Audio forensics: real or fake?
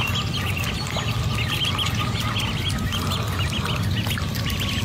real